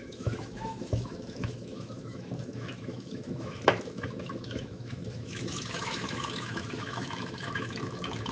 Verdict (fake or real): fake